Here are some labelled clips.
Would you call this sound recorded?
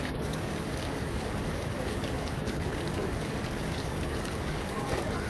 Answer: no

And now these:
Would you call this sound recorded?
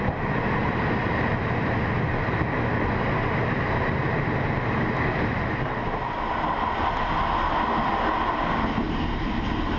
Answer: yes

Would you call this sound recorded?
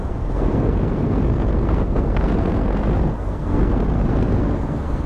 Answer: no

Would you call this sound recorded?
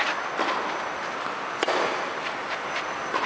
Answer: yes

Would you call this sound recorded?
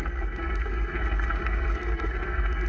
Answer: no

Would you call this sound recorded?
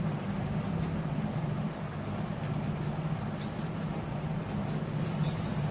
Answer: yes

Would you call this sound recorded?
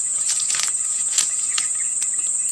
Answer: no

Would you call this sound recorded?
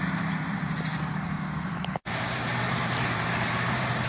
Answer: no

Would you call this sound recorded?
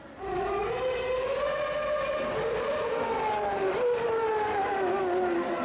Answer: yes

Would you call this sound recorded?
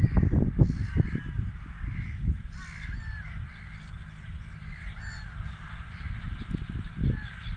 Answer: yes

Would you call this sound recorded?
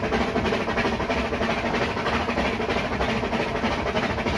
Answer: yes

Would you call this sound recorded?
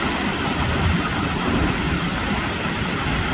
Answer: yes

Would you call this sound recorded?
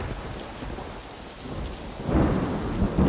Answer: yes